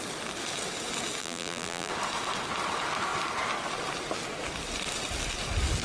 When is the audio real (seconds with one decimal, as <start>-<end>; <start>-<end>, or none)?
0.0-1.2; 1.9-5.8